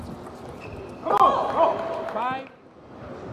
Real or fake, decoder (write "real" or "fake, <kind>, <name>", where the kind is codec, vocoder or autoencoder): real